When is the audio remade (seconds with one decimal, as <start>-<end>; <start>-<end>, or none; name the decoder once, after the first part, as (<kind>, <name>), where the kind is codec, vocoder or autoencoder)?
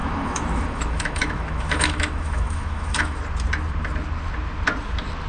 0.0-3.2 (autoencoder, DAC-VAE)